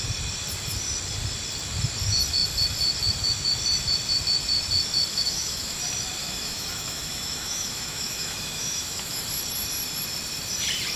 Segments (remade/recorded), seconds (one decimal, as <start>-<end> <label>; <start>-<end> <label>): 0.0-5.1 recorded; 5.1-5.8 remade; 5.8-6.2 recorded; 6.2-9.2 remade; 9.2-11.0 recorded